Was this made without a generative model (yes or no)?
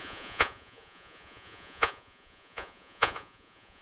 no